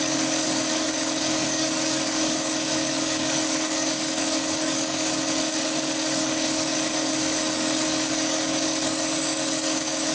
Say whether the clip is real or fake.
fake